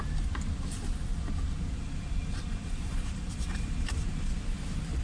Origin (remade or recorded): remade